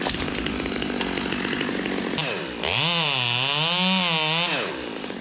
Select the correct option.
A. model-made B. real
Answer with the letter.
B